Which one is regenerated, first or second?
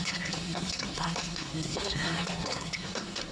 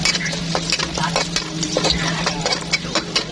first